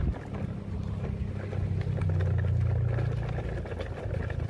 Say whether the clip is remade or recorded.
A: recorded